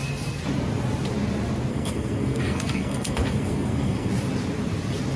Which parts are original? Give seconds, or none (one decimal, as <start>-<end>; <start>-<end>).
0.0-1.7; 4.1-5.2